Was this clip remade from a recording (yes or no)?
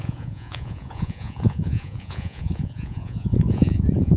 yes